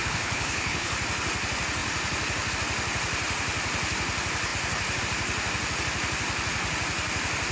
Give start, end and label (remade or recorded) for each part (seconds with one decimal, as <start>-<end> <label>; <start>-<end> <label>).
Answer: 0.0-0.9 remade; 0.9-7.5 recorded